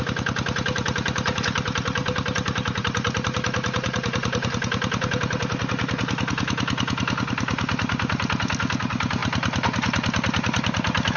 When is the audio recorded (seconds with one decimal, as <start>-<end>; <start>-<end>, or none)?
0.0-11.2